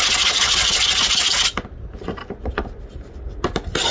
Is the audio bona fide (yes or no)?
yes